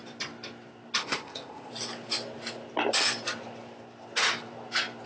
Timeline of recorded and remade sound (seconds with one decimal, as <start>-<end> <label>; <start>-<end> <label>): 0.0-1.0 recorded; 1.0-1.7 remade; 1.7-5.1 recorded